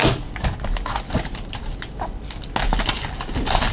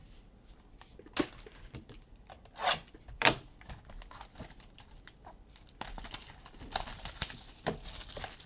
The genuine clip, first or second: first